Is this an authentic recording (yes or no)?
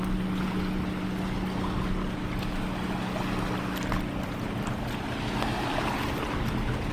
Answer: yes